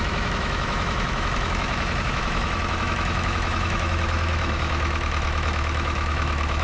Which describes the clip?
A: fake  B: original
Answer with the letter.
A